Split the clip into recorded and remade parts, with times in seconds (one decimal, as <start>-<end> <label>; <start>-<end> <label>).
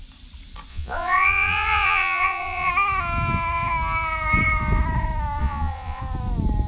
0.0-0.7 recorded; 0.7-2.7 remade; 2.7-5.4 recorded; 5.4-6.0 remade; 6.0-6.7 recorded